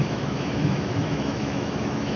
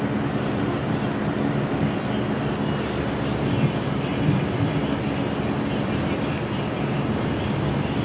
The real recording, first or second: second